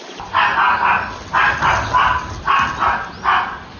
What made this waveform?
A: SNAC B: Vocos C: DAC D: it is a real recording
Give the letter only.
D